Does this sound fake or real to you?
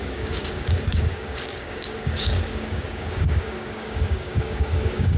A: fake